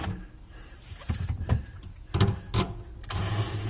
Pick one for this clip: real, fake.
fake